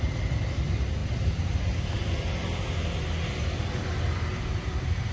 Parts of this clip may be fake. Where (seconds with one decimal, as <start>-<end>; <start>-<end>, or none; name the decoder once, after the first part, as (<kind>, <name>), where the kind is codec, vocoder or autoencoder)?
none